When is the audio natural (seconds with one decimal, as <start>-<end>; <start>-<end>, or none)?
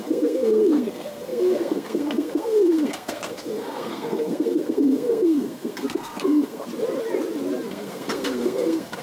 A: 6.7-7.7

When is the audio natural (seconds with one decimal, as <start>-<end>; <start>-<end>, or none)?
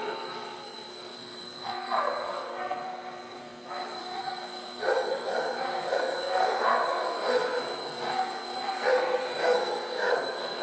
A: none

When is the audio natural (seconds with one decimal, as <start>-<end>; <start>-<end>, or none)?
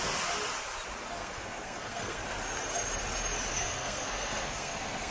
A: 0.0-1.2; 2.2-3.5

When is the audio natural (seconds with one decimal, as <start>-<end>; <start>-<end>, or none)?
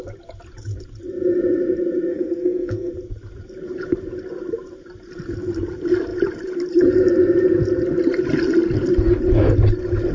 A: 0.0-2.1; 2.9-10.1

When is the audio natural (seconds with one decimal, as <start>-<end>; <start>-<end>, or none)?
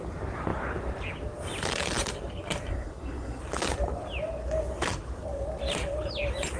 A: 0.0-2.7; 3.4-6.6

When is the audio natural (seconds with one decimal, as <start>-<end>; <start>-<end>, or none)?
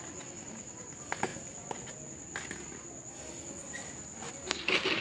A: 0.0-5.0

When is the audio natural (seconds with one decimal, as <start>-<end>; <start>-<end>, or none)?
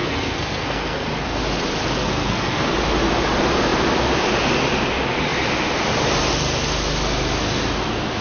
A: 1.4-2.0; 2.7-8.2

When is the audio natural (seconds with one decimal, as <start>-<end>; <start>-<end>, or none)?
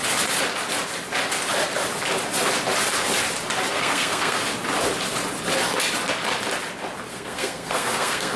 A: 0.0-3.7; 4.4-7.1